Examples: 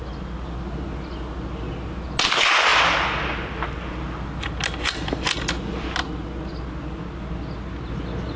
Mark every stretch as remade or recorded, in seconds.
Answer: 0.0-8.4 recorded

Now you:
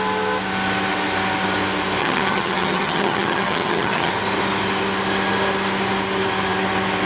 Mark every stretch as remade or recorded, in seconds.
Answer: 0.0-2.0 recorded; 2.0-4.1 remade; 4.1-7.1 recorded

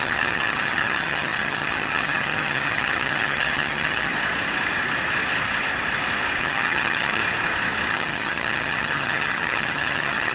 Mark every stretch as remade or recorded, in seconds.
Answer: 0.0-4.1 remade; 4.1-6.4 recorded; 6.4-7.2 remade; 7.2-7.9 recorded; 7.9-10.3 remade

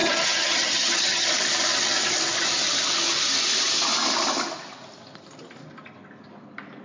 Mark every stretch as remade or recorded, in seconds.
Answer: 0.0-1.3 remade; 1.3-6.8 recorded

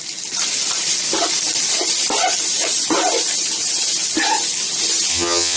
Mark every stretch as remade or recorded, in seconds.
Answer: 0.0-5.1 recorded; 5.1-5.6 remade

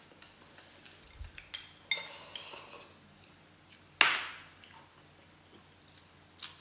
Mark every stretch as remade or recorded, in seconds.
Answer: 0.0-6.6 recorded

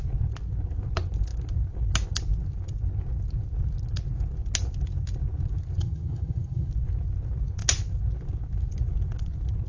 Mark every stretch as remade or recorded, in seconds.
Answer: 0.0-5.8 recorded; 5.8-6.7 remade; 6.7-9.7 recorded